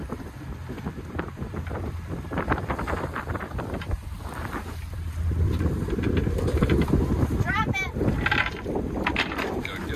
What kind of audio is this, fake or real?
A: fake